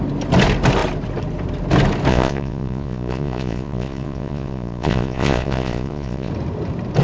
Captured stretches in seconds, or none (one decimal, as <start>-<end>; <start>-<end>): 0.0-2.1; 6.3-7.0